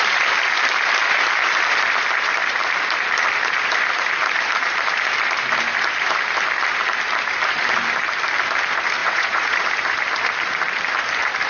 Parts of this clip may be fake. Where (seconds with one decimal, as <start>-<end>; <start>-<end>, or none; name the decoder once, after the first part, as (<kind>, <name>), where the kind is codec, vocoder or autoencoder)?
9.0-9.6 (vocoder, Vocos)